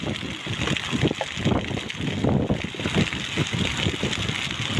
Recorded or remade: recorded